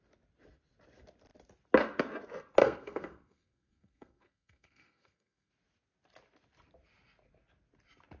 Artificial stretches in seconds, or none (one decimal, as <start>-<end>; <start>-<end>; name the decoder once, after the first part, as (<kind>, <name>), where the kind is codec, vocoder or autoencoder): 2.6-5.5 (codec, SNAC)